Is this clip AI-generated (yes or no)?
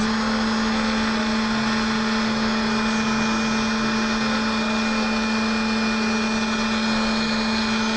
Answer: no